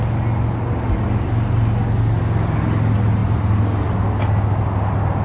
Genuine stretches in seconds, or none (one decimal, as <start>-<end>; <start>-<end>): 0.0-5.2